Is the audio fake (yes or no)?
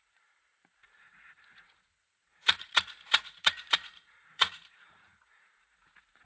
yes